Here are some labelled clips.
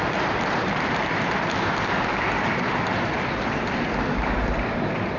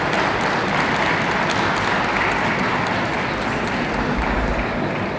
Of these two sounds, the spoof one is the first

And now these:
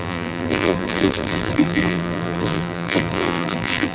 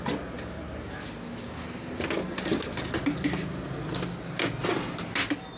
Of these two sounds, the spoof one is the first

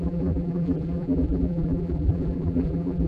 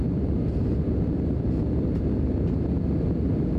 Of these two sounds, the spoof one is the first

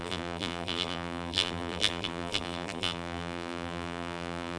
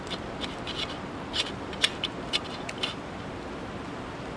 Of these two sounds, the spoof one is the first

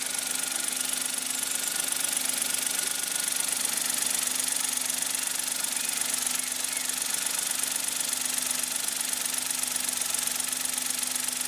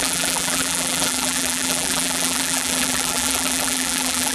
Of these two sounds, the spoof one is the second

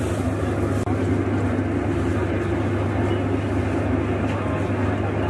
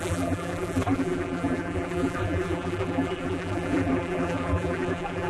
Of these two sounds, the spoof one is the second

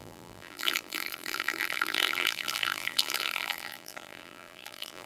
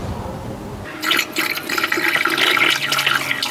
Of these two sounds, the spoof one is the first